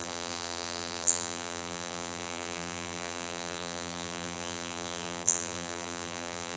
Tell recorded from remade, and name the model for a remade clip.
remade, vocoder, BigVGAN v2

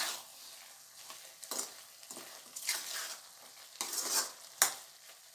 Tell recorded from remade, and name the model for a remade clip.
recorded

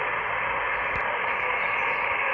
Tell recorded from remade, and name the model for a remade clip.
recorded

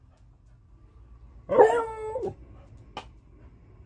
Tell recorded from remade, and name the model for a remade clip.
recorded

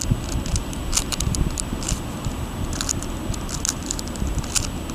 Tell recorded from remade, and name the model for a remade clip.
recorded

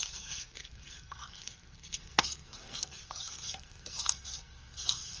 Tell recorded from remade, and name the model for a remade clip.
remade, codec, SNAC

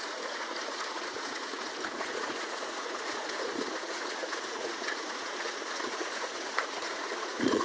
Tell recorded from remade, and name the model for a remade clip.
remade, vocoder, Vocos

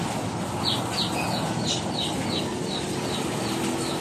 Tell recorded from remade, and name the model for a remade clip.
recorded